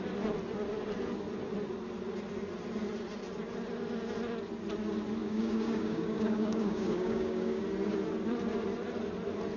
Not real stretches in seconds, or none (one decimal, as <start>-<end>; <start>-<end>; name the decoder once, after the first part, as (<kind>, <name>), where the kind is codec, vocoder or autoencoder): 5.2-7.6 (codec, DAC)